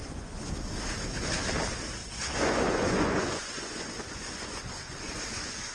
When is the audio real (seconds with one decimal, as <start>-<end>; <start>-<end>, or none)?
0.5-2.0